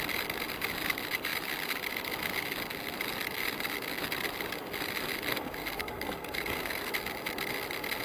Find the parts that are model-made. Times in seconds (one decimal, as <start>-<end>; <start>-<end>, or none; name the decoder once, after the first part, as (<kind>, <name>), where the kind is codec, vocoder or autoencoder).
5.3-6.9 (codec, SNAC)